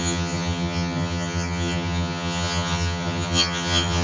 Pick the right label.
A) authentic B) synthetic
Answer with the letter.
B